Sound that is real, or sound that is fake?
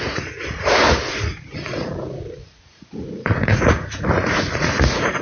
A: fake